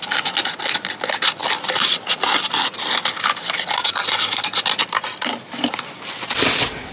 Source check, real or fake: real